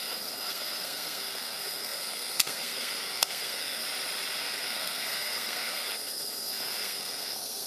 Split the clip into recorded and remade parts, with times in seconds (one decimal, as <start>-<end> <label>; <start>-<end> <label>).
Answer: 0.0-3.8 remade; 3.8-4.4 recorded; 4.4-7.7 remade

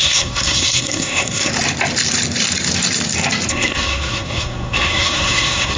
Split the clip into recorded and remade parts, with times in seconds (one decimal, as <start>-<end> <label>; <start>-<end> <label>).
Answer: 0.0-1.5 remade; 1.5-3.5 recorded; 3.5-5.8 remade

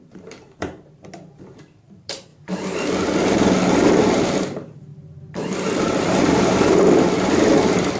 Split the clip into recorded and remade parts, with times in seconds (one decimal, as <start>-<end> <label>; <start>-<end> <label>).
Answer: 0.0-2.3 remade; 2.3-4.0 recorded; 4.0-8.0 remade